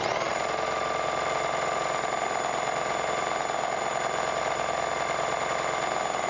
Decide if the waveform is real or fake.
real